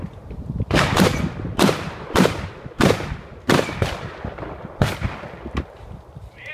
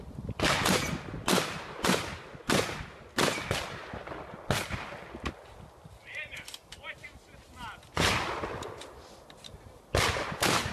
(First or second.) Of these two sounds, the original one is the second